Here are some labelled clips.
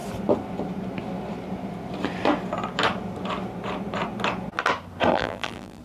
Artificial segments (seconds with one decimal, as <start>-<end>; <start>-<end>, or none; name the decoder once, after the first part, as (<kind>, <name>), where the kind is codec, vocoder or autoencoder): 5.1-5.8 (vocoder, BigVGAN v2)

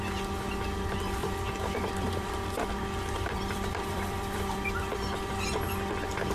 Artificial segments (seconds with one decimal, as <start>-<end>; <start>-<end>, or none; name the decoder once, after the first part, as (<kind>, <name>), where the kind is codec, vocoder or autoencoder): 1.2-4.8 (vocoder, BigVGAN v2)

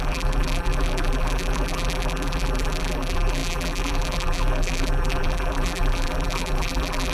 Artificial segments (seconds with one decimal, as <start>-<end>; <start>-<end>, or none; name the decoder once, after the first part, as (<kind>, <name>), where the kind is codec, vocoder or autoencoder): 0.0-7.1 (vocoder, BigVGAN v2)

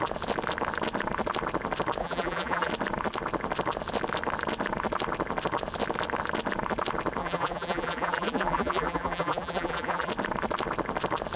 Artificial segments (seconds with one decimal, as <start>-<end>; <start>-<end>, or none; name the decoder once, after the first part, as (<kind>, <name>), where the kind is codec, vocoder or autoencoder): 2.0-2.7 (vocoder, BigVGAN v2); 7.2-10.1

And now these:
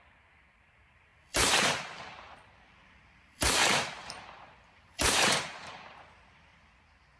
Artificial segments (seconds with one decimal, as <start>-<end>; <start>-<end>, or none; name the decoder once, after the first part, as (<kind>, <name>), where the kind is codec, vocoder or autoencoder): 0.0-7.2 (vocoder, BigVGAN v2)